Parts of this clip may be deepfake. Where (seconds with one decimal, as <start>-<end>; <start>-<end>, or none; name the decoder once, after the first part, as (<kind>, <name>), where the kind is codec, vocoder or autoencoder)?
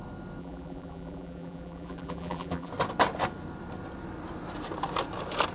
0.4-2.7 (vocoder, BigVGAN v2)